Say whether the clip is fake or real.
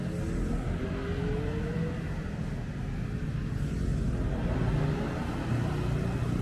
real